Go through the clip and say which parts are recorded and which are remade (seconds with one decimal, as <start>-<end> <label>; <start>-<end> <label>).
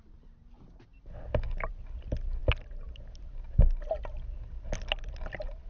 0.0-5.7 recorded